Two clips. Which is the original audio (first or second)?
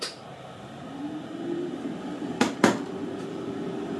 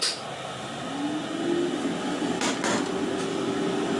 second